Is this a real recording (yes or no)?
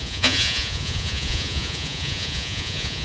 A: no